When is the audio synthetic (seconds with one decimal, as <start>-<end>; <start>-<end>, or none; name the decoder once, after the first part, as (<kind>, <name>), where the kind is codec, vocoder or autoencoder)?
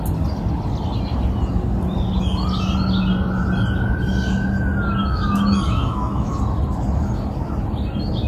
5.0-6.4 (autoencoder, DAC-VAE)